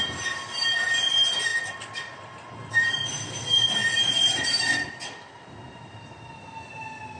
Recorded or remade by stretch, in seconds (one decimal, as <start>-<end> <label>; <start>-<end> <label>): 0.0-7.2 recorded